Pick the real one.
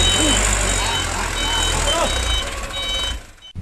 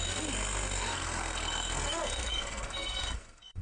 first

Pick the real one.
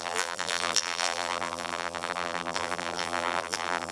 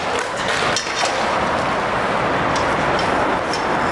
second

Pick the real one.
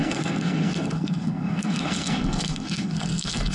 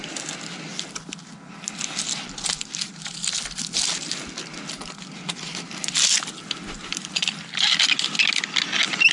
second